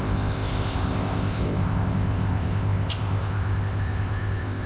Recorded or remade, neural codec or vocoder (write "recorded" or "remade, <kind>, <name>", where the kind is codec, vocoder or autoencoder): remade, codec, ZipCodec